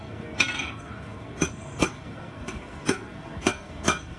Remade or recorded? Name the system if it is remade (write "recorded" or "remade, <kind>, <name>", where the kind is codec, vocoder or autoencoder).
remade, codec, SNAC